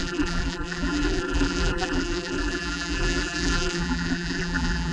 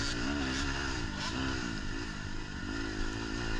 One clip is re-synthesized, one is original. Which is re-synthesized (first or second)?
first